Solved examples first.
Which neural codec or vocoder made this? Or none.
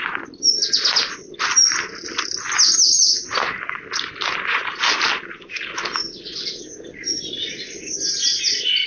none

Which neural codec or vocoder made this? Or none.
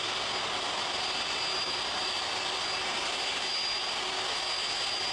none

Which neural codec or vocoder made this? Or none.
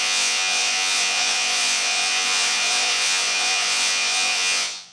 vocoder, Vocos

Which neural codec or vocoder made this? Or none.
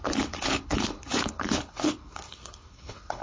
codec, HILCodec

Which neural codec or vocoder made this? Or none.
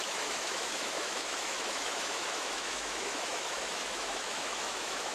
autoencoder, DAC-VAE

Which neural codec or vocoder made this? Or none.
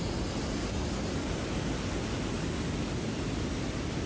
none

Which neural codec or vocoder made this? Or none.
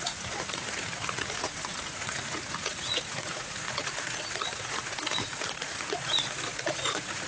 vocoder, Vocos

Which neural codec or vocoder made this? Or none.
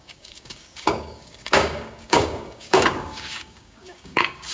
codec, DAC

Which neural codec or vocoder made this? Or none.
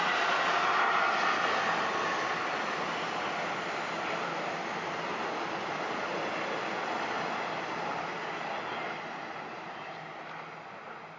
none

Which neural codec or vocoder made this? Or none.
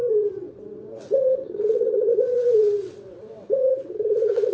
vocoder, WaveNeXt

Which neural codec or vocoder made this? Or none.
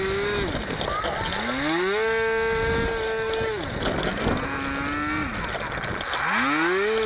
none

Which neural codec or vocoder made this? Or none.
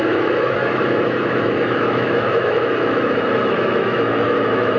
autoencoder, DAC-VAE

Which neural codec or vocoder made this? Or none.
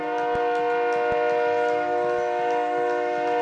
none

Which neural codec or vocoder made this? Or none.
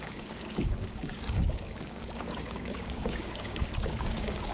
codec, DAC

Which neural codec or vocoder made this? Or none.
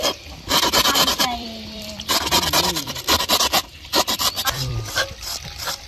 vocoder, BigVGAN v2